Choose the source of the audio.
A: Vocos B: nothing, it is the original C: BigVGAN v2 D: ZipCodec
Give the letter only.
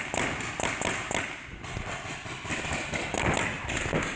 B